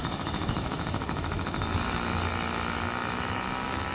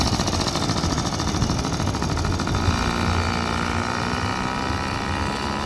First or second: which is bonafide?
second